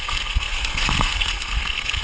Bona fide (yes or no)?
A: no